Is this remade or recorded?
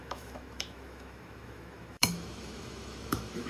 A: remade